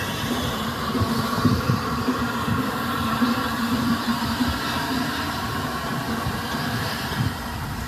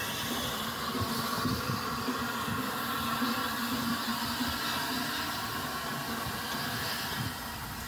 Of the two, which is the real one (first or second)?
second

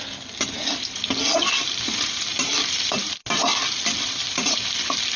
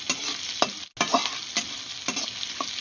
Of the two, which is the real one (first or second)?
second